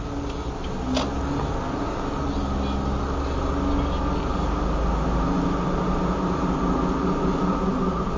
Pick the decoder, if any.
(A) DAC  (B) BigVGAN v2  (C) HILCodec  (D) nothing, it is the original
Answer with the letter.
D